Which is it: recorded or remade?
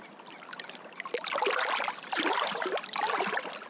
recorded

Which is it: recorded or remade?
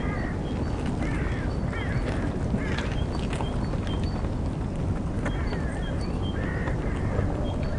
recorded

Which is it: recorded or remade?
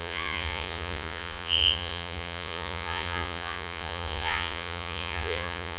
remade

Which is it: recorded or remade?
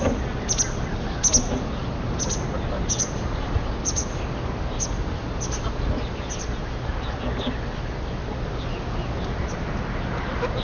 recorded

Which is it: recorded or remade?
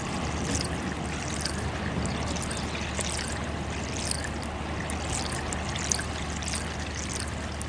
recorded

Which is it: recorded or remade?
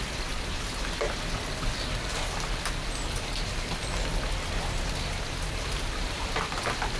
recorded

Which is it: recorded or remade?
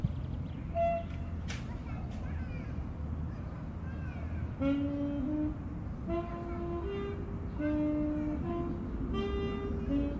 recorded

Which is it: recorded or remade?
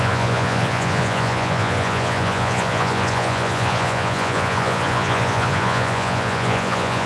remade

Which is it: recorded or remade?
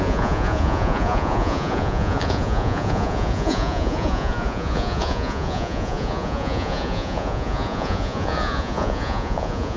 remade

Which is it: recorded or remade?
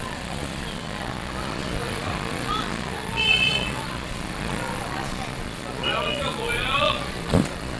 remade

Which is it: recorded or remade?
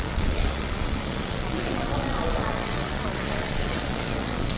remade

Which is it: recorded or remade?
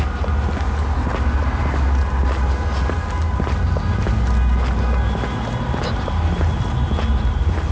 recorded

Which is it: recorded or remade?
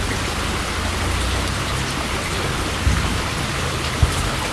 recorded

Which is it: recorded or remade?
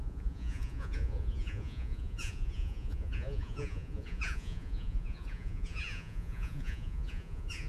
remade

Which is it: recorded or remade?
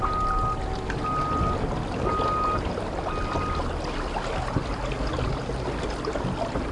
recorded